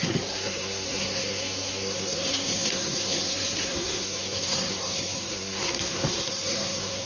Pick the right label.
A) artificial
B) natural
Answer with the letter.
A